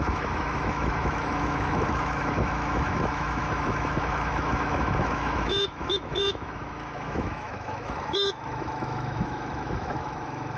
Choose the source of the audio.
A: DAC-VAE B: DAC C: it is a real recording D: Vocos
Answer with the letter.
A